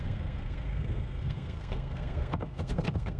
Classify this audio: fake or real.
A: fake